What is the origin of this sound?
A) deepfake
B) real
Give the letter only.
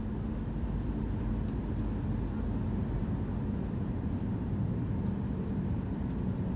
B